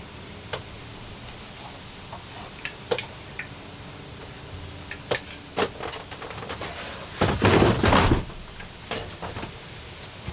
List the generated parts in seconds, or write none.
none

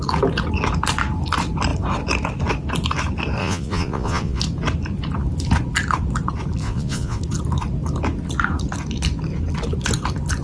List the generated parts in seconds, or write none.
3.4-4.4; 6.6-7.2

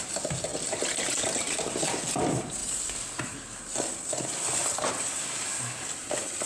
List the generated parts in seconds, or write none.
none

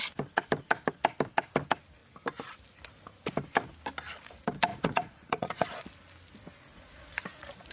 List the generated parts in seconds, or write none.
4.7-5.7; 6.7-7.7

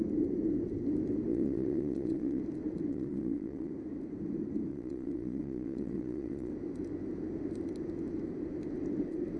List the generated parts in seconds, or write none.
1.3-2.4; 2.9-3.7; 4.7-6.5

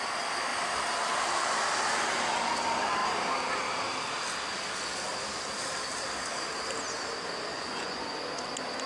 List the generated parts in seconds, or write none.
7.5-8.0

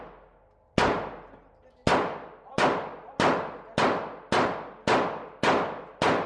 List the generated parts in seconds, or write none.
none

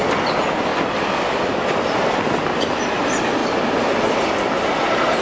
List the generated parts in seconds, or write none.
none